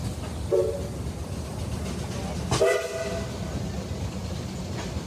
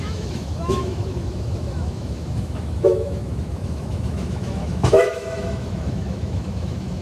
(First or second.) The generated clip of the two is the second